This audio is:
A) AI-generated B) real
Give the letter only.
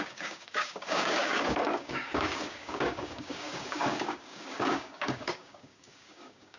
A